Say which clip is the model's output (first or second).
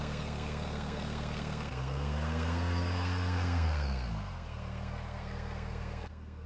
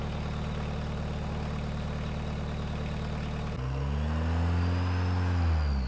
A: first